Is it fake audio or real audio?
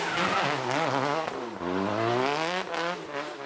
real